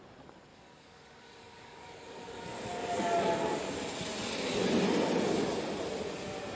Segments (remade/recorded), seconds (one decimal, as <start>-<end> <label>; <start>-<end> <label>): 0.0-0.5 recorded; 0.5-3.6 remade; 3.6-6.5 recorded